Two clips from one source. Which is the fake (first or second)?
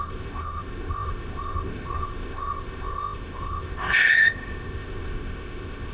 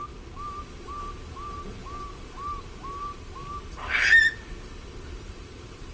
first